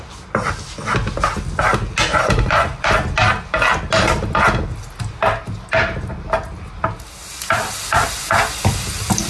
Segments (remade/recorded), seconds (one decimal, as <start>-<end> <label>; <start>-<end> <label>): 0.0-2.1 recorded; 2.1-2.9 remade; 2.9-9.3 recorded